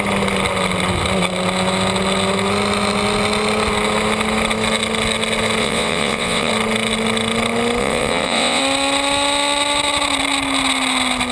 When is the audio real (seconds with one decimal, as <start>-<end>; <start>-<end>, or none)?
0.0-5.6; 6.5-7.8; 8.6-11.3